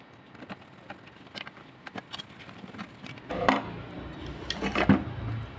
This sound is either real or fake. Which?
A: real